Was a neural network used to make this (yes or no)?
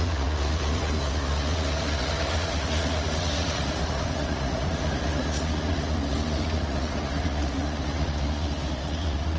yes